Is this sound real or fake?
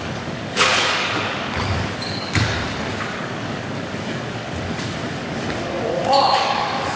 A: fake